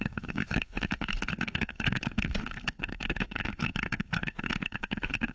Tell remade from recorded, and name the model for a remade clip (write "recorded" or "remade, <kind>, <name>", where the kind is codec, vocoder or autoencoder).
remade, codec, SNAC